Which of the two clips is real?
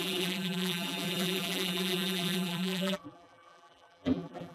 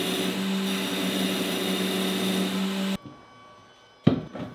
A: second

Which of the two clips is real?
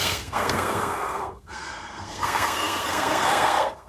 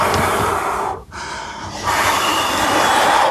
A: second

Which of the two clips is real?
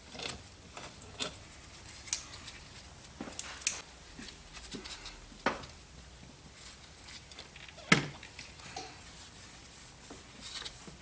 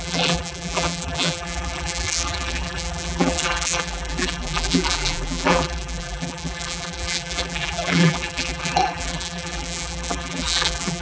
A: first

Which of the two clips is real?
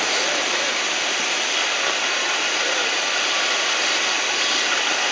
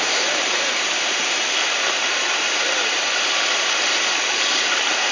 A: first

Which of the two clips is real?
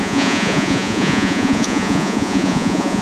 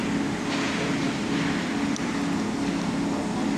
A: second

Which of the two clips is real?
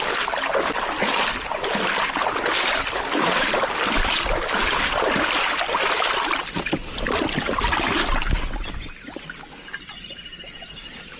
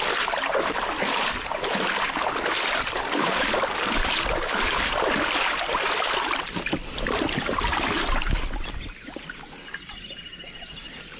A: first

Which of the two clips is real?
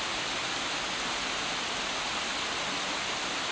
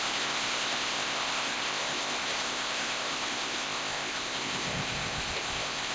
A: first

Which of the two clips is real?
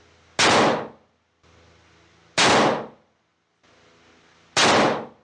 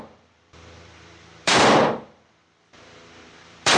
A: first